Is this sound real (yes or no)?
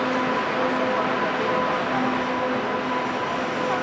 yes